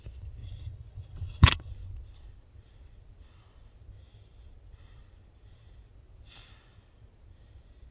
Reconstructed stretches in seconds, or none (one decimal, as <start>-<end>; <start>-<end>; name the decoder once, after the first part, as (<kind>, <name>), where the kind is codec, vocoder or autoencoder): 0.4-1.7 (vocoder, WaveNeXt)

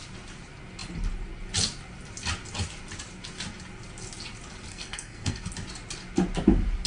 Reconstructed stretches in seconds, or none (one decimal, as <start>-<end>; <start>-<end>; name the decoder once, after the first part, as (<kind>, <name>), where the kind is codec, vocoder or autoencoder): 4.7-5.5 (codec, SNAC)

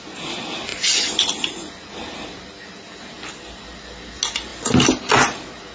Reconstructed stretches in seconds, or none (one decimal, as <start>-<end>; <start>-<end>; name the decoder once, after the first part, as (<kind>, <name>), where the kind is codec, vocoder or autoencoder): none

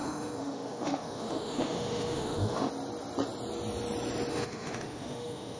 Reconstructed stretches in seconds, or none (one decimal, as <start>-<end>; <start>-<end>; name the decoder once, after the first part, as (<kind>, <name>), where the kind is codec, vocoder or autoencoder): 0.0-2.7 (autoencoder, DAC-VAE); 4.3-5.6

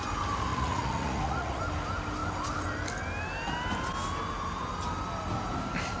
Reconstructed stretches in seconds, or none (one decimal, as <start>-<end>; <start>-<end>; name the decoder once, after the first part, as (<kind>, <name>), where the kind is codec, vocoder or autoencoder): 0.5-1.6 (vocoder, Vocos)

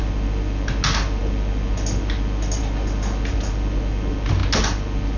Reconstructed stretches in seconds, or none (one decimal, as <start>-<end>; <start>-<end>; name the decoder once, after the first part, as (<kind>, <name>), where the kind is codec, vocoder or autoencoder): none

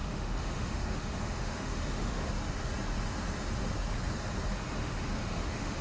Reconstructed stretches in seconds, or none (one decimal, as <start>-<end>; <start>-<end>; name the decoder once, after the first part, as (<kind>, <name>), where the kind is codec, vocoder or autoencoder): 0.0-2.3 (autoencoder, DAC-VAE); 4.8-5.8